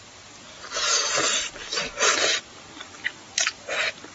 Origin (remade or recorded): recorded